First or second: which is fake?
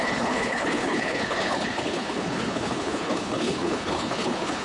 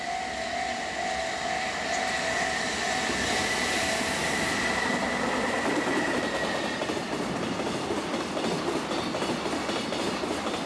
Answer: first